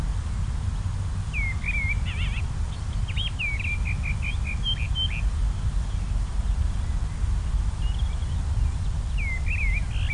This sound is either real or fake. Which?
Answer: real